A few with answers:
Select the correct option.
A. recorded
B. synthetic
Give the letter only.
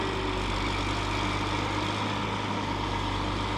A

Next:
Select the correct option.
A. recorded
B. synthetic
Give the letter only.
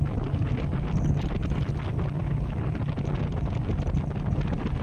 A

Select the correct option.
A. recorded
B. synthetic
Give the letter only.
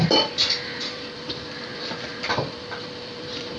B